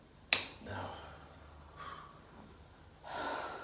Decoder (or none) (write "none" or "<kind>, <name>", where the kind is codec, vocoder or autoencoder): none